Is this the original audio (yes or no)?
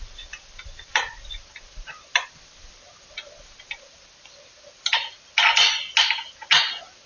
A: yes